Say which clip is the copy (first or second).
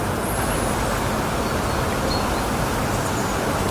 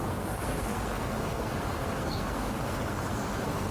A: second